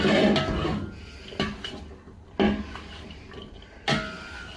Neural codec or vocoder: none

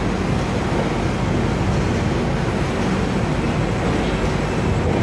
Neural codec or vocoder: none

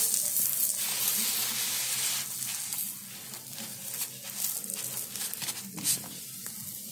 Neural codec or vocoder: none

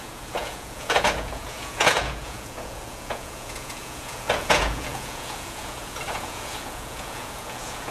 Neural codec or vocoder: vocoder, Vocos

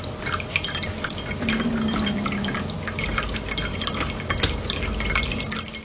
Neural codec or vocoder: none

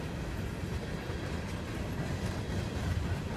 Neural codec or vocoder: none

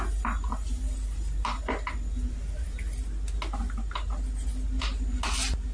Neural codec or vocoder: none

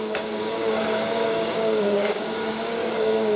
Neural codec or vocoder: codec, DAC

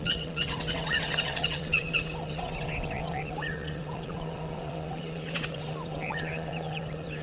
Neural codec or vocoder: vocoder, WaveNeXt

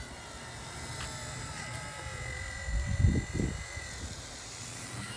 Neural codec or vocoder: none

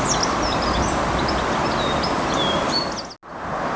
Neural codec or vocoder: none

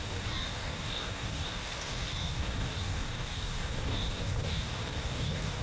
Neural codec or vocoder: codec, DAC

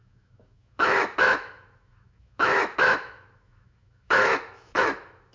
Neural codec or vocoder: autoencoder, DAC-VAE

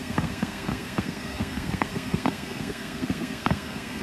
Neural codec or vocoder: codec, SNAC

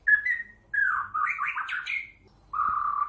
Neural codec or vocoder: none